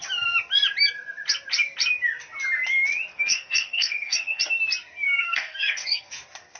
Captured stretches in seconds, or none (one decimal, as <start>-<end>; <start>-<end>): 0.0-3.1; 4.4-5.2; 6.1-6.6

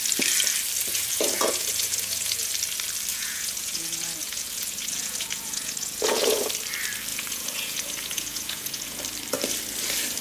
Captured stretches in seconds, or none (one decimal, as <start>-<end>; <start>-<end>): 0.0-0.9; 2.5-3.1; 6.5-7.1; 9.0-10.2

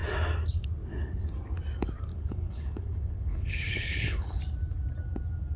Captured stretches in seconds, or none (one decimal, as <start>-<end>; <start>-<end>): 0.0-2.1; 4.4-5.6